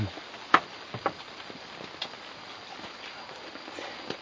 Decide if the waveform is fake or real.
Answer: real